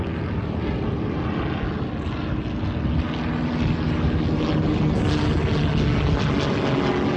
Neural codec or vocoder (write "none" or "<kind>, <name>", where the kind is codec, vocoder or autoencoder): none